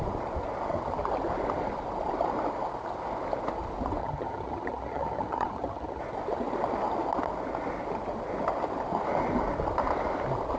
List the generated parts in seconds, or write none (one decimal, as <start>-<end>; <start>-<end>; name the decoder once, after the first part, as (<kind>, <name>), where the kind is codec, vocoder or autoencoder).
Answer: 4.0-6.0 (vocoder, HiFi-GAN)